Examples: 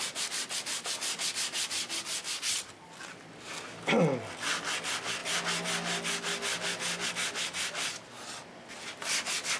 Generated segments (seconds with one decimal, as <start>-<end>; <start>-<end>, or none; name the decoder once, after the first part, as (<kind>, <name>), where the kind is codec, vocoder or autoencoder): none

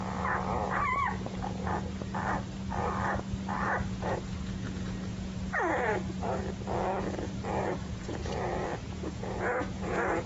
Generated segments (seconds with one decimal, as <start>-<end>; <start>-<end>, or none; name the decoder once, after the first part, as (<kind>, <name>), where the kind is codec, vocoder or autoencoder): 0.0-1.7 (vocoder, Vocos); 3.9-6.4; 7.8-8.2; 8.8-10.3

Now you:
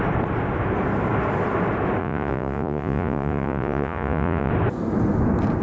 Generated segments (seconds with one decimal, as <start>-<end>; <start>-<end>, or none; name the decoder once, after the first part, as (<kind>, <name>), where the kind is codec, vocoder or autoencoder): 2.0-4.5 (vocoder, Vocos)